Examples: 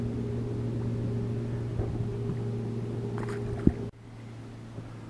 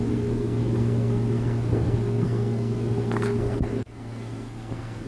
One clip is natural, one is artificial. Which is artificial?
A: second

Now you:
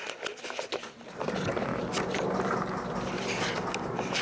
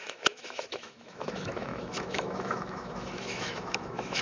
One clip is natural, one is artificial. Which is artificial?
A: second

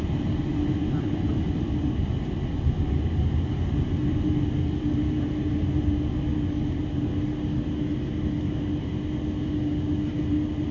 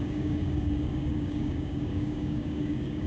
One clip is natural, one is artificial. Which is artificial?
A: second